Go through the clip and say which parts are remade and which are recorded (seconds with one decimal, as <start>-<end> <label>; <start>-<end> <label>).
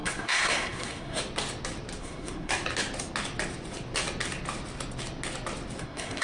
0.0-1.2 remade; 1.2-2.0 recorded; 2.0-2.5 remade; 2.5-5.8 recorded; 5.8-6.2 remade